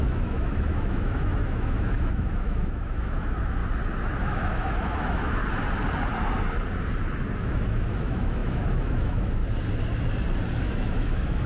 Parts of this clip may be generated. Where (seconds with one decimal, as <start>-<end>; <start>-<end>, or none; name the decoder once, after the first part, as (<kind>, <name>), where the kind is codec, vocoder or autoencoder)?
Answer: 0.0-3.6 (autoencoder, DAC-VAE); 4.2-5.4; 7.4-9.4; 10.6-11.5